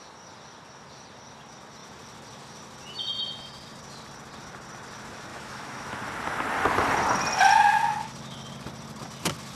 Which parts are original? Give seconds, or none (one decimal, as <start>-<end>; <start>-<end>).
0.0-5.3; 6.0-9.6